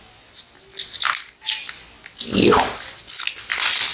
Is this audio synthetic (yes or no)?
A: no